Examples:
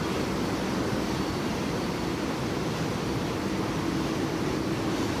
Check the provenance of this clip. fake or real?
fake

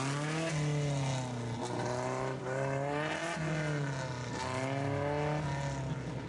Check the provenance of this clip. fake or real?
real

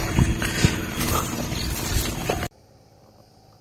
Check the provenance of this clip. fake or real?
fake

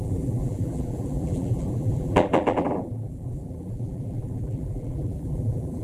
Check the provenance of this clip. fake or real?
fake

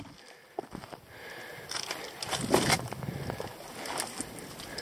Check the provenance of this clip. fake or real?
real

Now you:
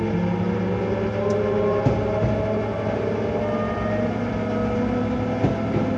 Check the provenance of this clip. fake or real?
real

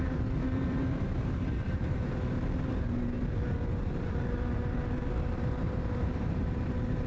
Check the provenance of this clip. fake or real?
fake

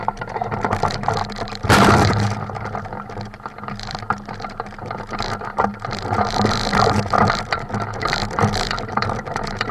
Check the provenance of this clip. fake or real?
fake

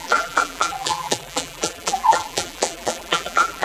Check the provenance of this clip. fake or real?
fake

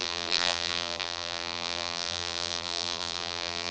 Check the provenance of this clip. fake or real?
fake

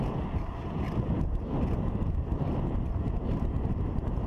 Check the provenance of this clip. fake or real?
fake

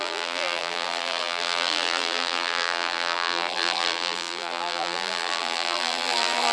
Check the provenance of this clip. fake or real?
fake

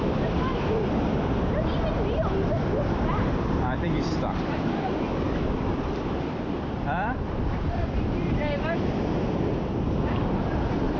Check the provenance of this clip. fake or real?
fake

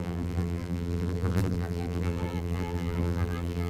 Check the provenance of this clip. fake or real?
fake